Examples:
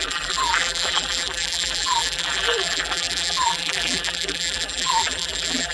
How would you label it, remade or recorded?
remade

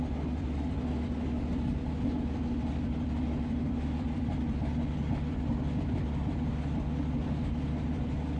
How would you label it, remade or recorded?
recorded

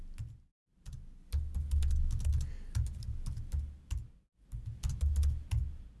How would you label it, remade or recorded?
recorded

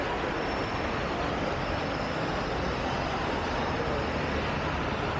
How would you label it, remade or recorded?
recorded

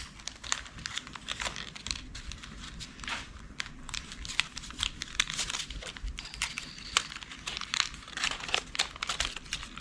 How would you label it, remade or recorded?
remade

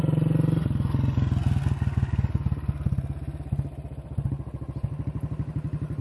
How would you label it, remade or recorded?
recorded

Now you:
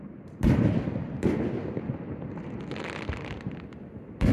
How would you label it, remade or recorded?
recorded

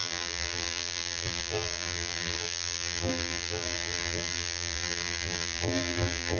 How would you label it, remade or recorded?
remade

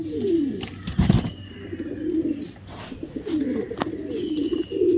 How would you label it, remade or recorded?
recorded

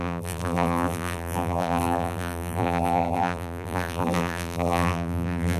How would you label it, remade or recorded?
remade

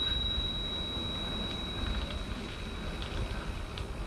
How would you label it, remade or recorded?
recorded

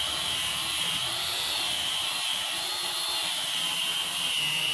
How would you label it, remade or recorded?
remade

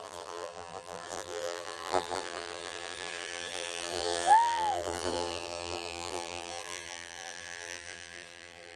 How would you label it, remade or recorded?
remade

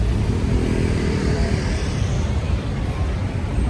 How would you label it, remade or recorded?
remade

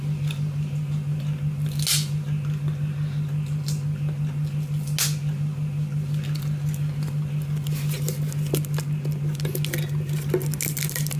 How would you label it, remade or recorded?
recorded